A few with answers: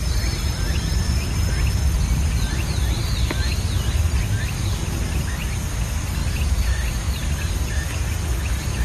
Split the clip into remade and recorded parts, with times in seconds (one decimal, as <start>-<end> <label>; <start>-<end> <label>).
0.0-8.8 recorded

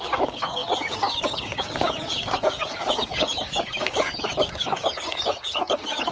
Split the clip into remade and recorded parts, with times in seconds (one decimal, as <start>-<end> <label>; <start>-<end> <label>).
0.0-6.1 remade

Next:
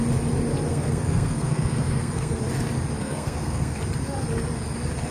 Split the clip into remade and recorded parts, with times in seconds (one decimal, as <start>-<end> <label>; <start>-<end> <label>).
0.0-0.7 recorded; 0.7-2.4 remade; 2.4-3.0 recorded; 3.0-3.8 remade; 3.8-5.1 recorded

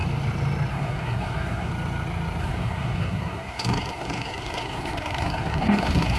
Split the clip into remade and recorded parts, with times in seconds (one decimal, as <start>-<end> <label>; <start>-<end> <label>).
0.0-0.7 recorded; 0.7-1.7 remade; 1.7-2.4 recorded; 2.4-6.2 remade

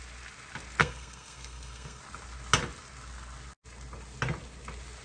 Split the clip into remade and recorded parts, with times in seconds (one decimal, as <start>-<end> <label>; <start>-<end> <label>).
0.0-0.8 recorded; 0.8-2.0 remade; 2.0-5.0 recorded

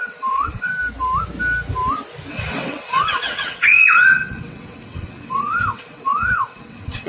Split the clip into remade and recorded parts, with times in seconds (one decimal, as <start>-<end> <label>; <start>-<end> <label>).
0.0-0.7 remade; 0.7-2.3 recorded; 2.3-7.1 remade